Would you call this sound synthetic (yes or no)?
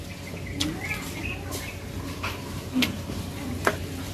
no